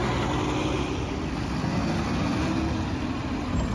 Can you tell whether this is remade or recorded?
recorded